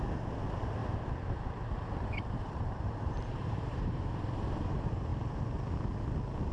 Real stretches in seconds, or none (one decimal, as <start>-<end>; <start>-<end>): 0.0-0.8; 4.0-6.5

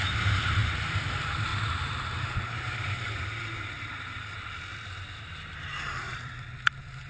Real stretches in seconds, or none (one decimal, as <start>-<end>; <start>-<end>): 4.7-5.3

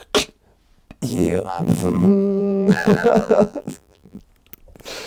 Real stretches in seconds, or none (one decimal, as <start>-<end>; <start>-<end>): 0.0-1.1; 4.2-5.1

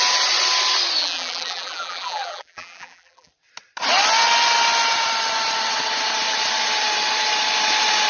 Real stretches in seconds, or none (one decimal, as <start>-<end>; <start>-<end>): 0.0-1.0; 3.3-8.1